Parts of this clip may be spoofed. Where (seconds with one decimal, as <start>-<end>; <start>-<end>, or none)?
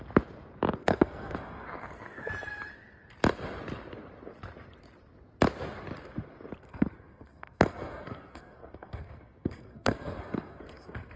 0.8-2.3; 6.6-11.2